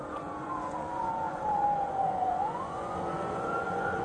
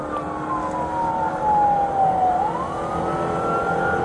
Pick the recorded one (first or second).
second